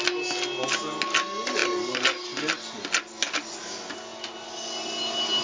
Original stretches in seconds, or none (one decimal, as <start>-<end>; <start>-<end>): 0.0-5.4